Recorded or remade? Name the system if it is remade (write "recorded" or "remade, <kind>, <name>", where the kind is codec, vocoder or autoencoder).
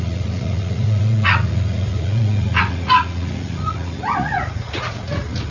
remade, vocoder, Vocos